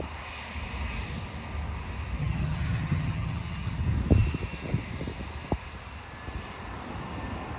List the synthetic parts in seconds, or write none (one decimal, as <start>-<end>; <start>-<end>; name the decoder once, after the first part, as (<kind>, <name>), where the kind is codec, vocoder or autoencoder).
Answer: 2.2-3.8 (vocoder, HiFi-GAN)